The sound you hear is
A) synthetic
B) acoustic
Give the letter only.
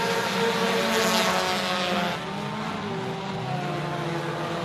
B